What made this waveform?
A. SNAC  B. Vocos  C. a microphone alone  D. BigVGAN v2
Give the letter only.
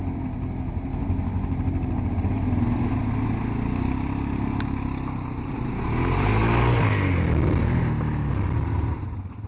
C